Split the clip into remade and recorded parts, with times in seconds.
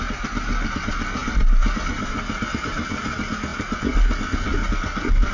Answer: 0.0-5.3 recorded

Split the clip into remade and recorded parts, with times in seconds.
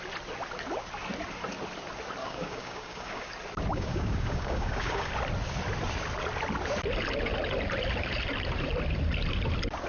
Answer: 0.0-2.2 recorded; 2.2-3.3 remade; 3.3-3.7 recorded; 3.7-5.1 remade; 5.1-9.9 recorded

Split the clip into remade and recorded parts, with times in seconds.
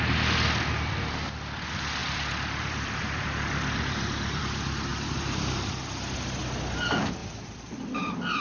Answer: 0.0-2.0 recorded; 2.0-4.4 remade; 4.4-4.9 recorded; 4.9-5.8 remade; 5.8-7.2 recorded; 7.2-8.0 remade; 8.0-8.4 recorded